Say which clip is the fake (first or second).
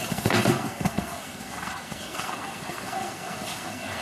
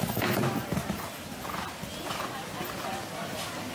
first